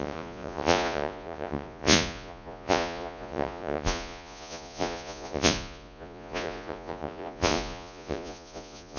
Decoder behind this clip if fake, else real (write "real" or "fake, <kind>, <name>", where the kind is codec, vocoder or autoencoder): fake, vocoder, Vocos